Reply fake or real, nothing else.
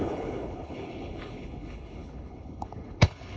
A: fake